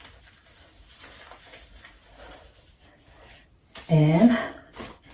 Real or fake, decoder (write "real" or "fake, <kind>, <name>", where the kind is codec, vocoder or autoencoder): real